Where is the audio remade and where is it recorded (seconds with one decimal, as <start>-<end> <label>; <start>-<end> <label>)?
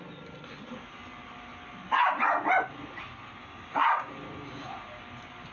0.0-3.4 recorded; 3.4-4.1 remade; 4.1-5.5 recorded